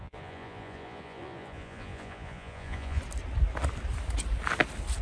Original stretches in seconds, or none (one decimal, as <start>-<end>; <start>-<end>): 3.0-5.0